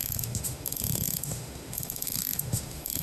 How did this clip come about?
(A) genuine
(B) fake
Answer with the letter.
B